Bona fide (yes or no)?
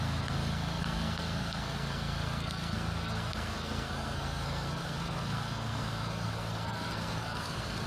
no